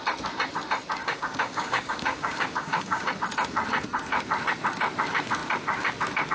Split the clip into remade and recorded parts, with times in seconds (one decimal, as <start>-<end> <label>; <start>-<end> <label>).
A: 0.0-1.0 recorded; 1.0-3.1 remade; 3.1-6.3 recorded